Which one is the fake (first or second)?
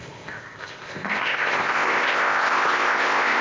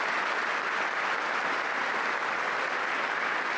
first